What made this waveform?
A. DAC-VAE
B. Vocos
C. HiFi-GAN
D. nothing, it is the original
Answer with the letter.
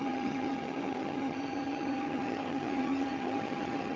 C